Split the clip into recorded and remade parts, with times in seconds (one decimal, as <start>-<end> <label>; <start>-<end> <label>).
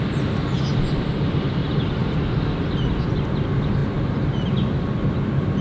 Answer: 0.0-5.6 recorded